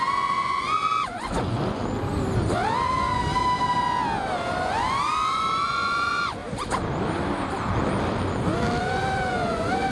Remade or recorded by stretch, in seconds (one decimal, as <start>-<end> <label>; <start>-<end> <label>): 0.0-1.8 remade; 1.8-4.6 recorded; 4.6-6.4 remade; 6.4-8.8 recorded; 8.8-9.9 remade